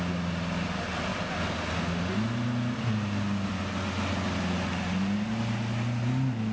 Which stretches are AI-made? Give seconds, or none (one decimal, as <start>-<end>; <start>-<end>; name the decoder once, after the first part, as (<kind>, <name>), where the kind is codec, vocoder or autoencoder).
none